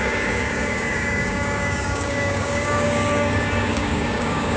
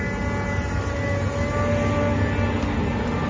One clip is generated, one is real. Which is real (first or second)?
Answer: second